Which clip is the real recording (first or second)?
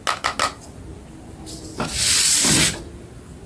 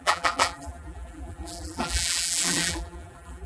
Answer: first